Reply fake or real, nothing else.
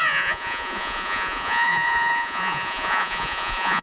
fake